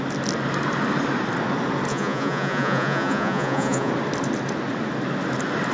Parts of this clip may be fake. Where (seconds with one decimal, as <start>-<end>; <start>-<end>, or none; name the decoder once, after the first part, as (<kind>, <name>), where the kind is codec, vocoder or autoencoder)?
1.9-3.9 (vocoder, Vocos)